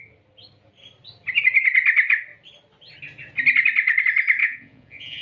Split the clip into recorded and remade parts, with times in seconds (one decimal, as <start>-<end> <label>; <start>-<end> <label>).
0.0-4.4 recorded; 4.4-5.2 remade